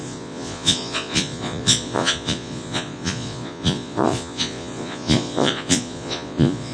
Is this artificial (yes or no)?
yes